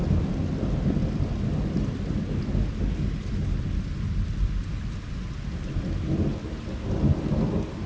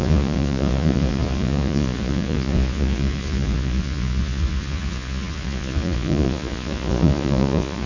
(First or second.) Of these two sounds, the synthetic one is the second